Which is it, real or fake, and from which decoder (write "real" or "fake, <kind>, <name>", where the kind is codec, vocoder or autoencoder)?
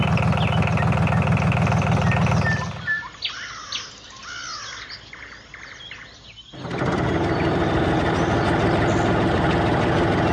real